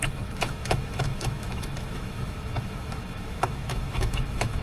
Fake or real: fake